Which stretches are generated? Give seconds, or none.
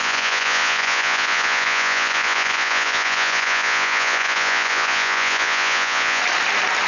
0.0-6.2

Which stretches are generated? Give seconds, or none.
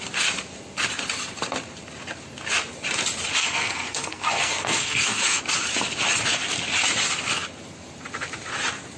3.4-5.4